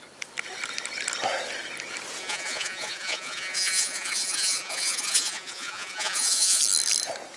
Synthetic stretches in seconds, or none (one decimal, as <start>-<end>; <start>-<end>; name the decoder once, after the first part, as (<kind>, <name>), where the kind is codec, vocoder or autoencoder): 2.2-6.6 (vocoder, Vocos)